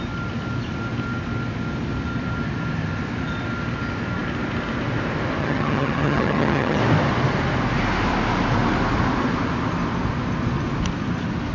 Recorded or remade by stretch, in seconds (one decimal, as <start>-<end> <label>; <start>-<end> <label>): 0.0-5.4 recorded; 5.4-6.8 remade; 6.8-11.5 recorded